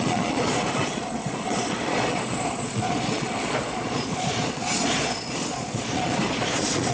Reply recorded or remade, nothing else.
remade